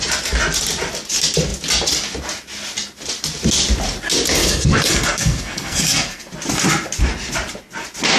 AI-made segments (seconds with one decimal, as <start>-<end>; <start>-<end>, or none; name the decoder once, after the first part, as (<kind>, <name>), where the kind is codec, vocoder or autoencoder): 4.4-6.3 (codec, SNAC)